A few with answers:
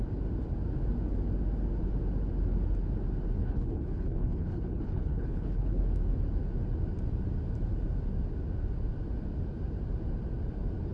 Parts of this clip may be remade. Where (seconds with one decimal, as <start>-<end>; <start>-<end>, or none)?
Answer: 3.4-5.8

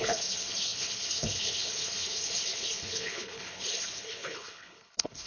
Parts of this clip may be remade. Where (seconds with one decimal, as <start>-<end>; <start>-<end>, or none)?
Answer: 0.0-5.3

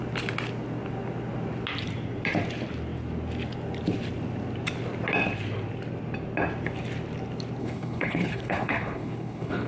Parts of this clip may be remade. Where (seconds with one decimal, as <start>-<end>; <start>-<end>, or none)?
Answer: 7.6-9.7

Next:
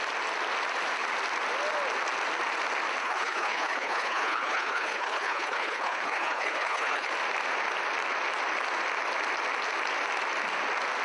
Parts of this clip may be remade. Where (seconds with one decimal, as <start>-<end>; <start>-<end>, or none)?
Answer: 3.0-7.1

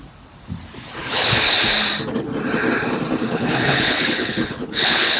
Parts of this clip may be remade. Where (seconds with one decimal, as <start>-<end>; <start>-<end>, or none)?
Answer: 1.0-1.5; 3.2-5.2

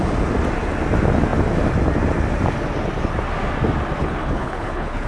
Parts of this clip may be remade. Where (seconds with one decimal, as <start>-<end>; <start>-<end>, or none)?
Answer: 4.0-5.1